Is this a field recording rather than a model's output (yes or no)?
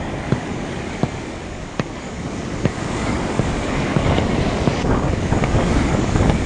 no